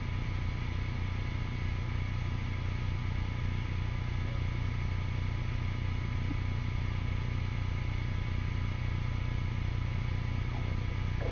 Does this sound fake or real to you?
real